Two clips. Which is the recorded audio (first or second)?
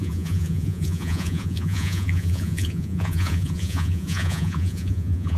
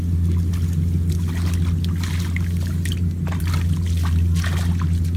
second